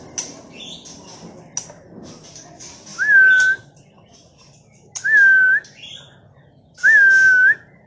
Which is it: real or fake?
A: real